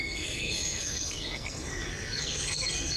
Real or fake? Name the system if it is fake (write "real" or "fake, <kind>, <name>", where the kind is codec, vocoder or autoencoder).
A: fake, codec, SNAC